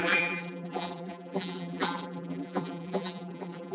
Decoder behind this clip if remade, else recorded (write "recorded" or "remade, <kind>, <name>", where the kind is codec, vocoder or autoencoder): remade, vocoder, BigVGAN v2